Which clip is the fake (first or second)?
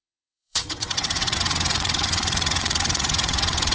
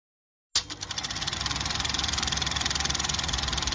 first